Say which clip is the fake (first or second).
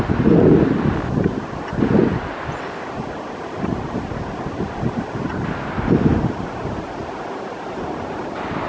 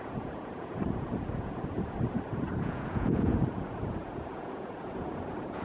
second